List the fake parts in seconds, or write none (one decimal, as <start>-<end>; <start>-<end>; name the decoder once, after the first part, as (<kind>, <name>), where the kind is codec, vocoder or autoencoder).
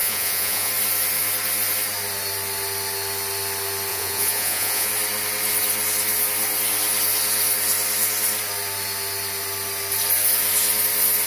0.0-0.7 (vocoder, Vocos); 3.9-4.9